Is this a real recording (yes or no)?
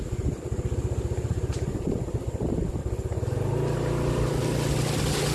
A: yes